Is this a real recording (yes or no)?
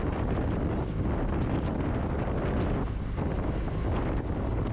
yes